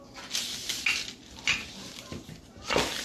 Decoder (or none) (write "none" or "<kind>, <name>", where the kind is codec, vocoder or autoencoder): none